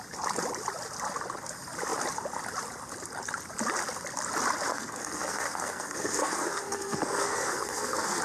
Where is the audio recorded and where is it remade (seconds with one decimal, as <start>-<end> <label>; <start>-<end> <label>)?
0.0-4.7 recorded; 4.7-8.2 remade